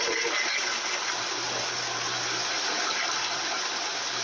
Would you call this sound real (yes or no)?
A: yes